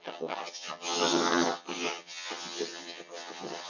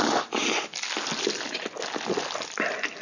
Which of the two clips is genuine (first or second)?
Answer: second